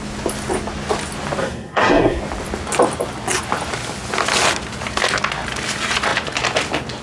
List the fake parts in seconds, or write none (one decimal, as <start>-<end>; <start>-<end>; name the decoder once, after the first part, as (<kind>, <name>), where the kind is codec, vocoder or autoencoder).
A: 1.4-2.2 (codec, SNAC)